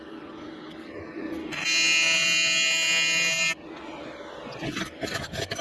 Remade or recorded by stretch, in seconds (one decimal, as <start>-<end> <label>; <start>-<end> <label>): 0.0-1.4 remade; 1.4-4.8 recorded; 4.8-5.6 remade